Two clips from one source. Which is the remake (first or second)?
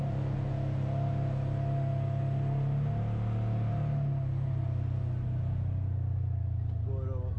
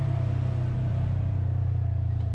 second